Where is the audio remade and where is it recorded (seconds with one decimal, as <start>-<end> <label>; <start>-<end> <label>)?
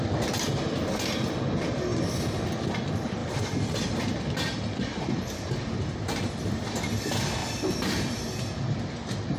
0.0-3.2 recorded; 3.2-4.0 remade; 4.0-4.9 recorded; 4.9-5.5 remade; 5.5-7.4 recorded; 7.4-8.2 remade; 8.2-9.4 recorded